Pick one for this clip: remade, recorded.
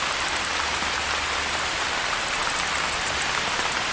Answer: recorded